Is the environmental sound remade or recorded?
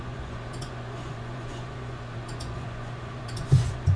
remade